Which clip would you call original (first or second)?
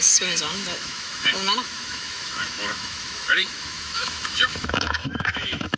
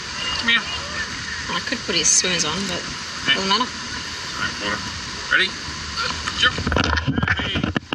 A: second